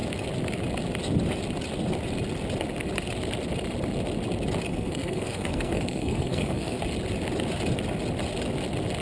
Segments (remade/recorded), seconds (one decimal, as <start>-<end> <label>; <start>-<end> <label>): 0.0-4.7 recorded; 4.7-6.8 remade; 6.8-9.0 recorded